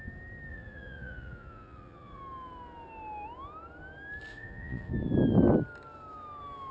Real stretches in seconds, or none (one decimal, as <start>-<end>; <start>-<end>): 0.0-0.5; 2.2-4.3; 4.9-6.7